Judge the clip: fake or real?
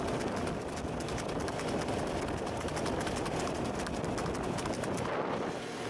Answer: fake